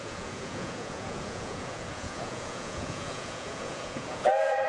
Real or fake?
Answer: fake